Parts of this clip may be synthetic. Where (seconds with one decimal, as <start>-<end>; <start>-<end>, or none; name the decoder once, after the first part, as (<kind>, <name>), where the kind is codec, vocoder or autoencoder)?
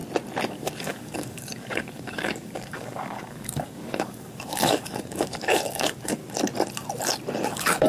0.5-6.2 (codec, DAC); 7.5-7.9